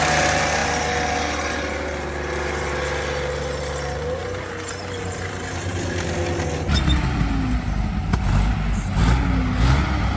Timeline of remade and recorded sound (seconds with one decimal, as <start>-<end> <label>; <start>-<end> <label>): 0.0-10.2 recorded